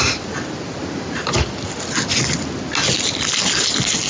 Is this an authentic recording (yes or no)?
yes